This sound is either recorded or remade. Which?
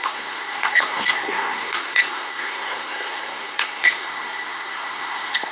remade